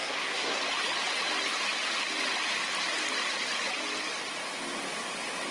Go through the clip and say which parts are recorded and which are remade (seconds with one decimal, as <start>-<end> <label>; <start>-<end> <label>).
0.0-0.6 remade; 0.6-5.5 recorded